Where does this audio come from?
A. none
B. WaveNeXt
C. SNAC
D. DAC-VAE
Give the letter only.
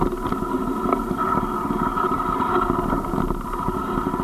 A